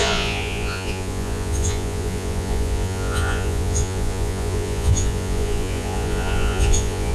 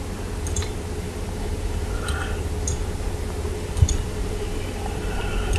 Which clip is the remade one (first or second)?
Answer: first